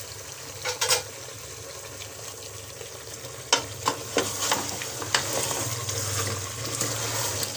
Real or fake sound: real